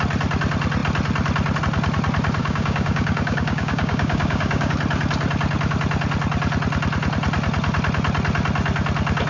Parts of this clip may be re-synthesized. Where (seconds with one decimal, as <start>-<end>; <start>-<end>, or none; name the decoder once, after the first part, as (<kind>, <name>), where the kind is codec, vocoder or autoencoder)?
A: 2.4-4.7 (codec, DAC)